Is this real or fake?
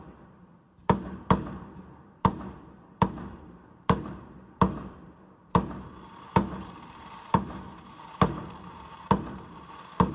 fake